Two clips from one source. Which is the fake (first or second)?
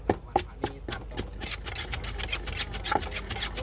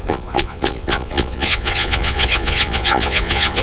second